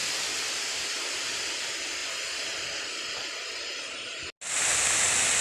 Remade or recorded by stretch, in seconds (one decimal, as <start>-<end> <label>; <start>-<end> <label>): 0.0-5.4 recorded